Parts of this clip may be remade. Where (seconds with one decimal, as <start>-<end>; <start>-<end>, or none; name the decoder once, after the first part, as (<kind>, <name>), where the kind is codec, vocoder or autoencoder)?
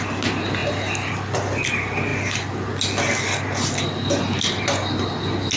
none